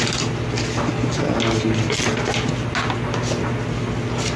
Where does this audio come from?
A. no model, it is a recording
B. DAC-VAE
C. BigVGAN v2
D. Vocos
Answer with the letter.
A